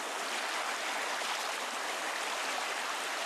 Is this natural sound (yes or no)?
yes